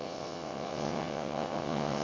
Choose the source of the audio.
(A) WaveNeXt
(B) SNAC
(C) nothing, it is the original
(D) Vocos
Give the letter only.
A